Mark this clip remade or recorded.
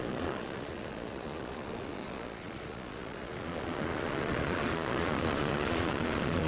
remade